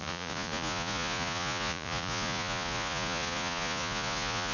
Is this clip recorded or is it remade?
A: remade